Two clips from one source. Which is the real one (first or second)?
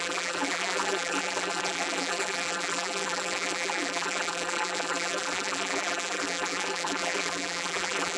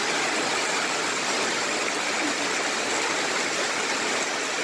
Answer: second